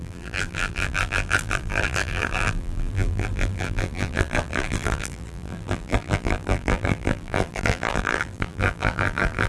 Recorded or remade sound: remade